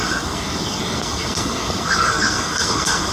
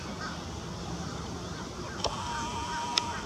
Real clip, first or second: second